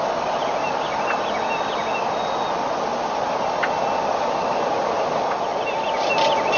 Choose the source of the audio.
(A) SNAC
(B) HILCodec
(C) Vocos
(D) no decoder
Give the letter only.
D